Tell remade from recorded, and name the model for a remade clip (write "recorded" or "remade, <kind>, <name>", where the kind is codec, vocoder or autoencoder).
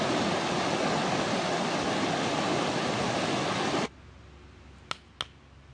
recorded